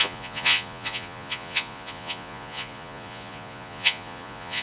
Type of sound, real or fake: fake